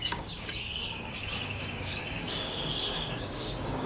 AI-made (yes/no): yes